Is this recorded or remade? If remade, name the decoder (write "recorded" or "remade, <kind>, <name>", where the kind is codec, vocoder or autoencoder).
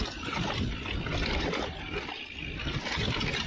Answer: recorded